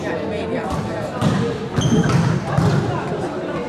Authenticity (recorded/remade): recorded